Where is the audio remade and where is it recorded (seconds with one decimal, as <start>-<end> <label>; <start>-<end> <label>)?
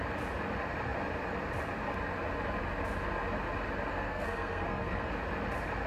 0.0-3.9 recorded; 3.9-5.1 remade; 5.1-5.9 recorded